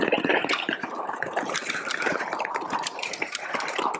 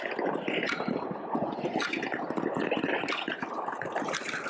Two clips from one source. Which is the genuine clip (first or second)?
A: second